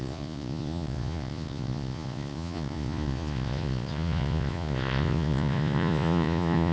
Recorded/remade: remade